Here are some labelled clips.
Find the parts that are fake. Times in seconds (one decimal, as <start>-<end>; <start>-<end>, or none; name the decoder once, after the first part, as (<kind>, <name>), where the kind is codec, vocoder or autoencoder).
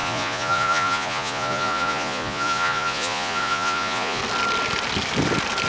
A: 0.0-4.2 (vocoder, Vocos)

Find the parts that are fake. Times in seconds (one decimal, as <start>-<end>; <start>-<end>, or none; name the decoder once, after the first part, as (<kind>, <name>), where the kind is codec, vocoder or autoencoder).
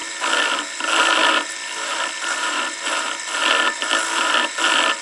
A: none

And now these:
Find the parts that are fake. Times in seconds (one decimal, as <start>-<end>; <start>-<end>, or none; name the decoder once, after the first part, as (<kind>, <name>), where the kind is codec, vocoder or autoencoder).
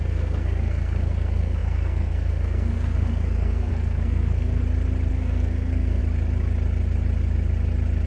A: 0.0-4.6 (codec, SNAC); 5.1-6.0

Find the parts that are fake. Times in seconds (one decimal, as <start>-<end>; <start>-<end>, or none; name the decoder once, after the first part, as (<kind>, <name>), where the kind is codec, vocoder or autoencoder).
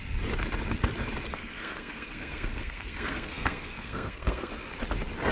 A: 1.3-4.5 (codec, SNAC)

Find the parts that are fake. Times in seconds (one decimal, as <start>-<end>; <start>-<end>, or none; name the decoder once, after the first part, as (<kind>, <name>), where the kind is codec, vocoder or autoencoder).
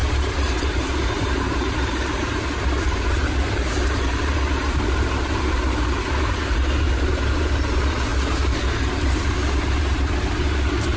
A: 0.0-8.1 (vocoder, BigVGAN v2); 9.8-11.0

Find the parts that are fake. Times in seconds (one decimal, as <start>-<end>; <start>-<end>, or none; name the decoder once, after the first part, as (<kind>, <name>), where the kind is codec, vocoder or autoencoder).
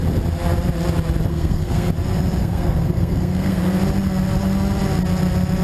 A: 1.3-1.9 (codec, SNAC); 2.4-3.6